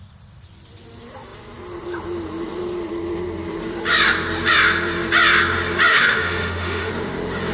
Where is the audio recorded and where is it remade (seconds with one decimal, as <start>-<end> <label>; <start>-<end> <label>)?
0.0-5.9 recorded; 5.9-6.9 remade; 6.9-7.5 recorded